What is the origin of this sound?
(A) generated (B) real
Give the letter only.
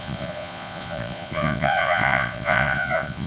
A